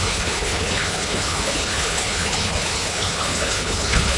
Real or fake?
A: fake